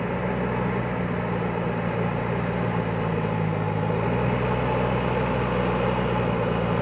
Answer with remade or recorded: recorded